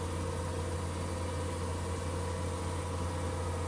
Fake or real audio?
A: real